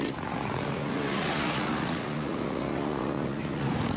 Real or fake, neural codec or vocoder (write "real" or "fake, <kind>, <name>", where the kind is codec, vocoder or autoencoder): fake, vocoder, Vocos